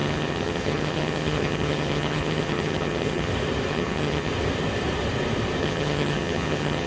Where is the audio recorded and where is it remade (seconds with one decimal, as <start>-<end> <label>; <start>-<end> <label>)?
0.0-3.3 remade; 3.3-3.7 recorded; 3.7-4.3 remade; 4.3-5.6 recorded; 5.6-6.9 remade